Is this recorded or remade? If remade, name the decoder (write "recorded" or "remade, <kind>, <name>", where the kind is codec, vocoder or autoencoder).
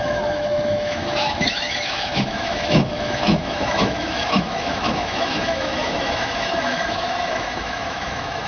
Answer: remade, autoencoder, DAC-VAE